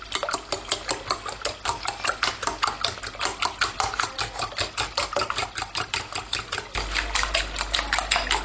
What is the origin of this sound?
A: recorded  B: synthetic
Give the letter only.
A